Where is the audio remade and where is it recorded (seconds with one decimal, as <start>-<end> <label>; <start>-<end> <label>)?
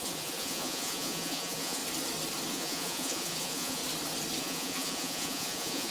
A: 0.0-1.8 remade; 1.8-2.5 recorded; 2.5-3.8 remade; 3.8-4.4 recorded; 4.4-5.9 remade